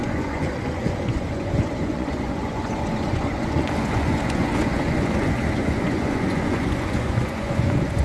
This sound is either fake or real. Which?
fake